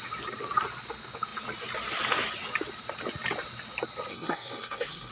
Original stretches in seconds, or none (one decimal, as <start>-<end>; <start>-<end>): 0.0-4.1